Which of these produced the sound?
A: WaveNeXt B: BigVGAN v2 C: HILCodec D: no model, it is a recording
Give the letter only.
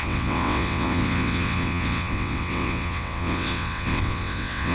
A